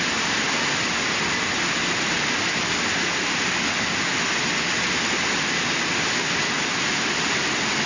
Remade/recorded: recorded